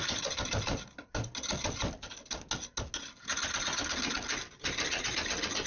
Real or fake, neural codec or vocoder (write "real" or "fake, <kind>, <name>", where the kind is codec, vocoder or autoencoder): real